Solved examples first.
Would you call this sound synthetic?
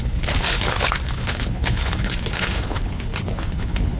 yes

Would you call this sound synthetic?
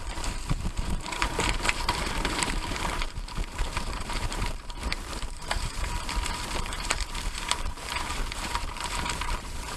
yes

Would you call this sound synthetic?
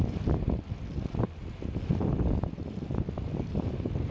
yes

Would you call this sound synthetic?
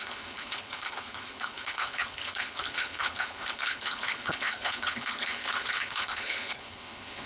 yes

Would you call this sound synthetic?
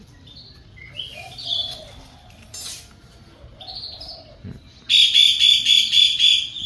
no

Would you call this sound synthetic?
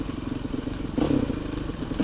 no